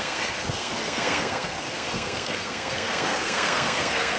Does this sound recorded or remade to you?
remade